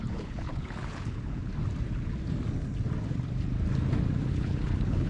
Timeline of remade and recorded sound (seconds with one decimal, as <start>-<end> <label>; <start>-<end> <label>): 0.0-1.5 remade; 1.5-4.3 recorded; 4.3-5.1 remade